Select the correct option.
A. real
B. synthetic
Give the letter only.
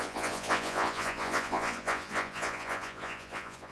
B